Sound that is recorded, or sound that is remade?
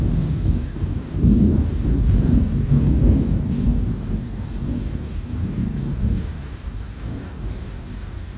remade